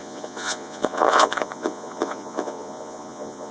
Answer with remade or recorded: remade